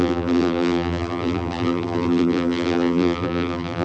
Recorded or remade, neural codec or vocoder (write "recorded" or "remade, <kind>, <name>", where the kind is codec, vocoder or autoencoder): remade, vocoder, BigVGAN v2